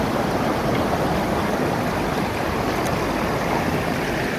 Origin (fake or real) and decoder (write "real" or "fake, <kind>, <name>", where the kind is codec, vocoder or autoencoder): real